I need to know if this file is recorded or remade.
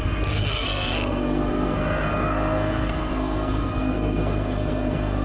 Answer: remade